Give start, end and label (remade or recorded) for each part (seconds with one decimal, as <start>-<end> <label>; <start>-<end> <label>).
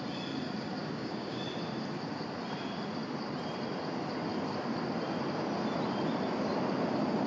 0.0-0.8 recorded; 0.8-1.4 remade; 1.4-7.3 recorded